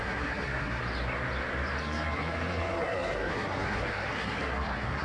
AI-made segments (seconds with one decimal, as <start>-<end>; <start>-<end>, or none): 0.0-0.8; 1.8-5.0